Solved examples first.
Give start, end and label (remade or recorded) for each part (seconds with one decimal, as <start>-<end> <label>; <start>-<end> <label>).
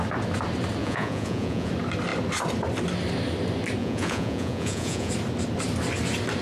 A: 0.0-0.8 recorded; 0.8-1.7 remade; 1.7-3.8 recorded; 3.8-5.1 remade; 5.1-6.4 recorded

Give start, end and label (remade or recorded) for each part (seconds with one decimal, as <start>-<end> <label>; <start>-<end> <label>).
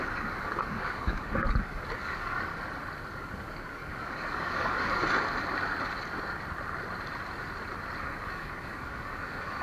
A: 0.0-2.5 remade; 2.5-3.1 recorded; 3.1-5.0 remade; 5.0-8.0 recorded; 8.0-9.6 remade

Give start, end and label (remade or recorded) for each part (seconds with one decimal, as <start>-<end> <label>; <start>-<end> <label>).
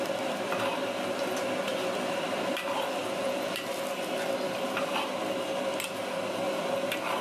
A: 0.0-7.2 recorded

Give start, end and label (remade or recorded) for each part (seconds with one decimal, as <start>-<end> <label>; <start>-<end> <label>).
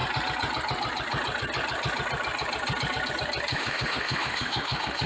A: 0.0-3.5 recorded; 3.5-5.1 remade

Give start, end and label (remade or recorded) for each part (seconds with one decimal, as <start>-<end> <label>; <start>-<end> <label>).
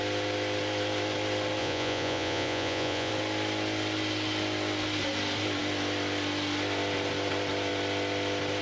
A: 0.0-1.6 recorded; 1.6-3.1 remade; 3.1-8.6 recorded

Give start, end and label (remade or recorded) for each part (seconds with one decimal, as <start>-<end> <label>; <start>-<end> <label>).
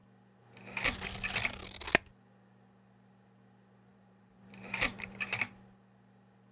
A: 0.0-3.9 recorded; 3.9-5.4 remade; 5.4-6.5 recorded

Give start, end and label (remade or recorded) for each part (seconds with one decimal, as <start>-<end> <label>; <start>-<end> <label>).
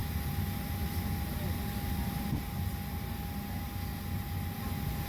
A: 0.0-5.1 recorded